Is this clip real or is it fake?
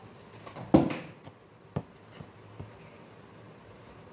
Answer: real